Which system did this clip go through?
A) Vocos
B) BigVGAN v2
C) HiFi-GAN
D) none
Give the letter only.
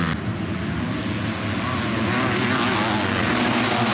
D